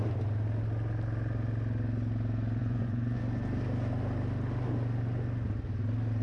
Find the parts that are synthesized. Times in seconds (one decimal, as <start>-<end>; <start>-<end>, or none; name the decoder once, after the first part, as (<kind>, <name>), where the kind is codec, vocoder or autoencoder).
2.6-3.2 (vocoder, Vocos)